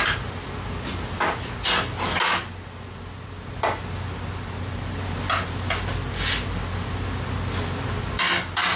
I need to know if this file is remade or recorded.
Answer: recorded